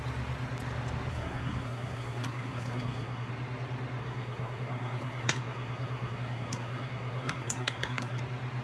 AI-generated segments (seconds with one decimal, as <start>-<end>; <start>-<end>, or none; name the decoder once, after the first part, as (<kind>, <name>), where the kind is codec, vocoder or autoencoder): 1.1-3.3 (codec, SNAC); 4.0-8.2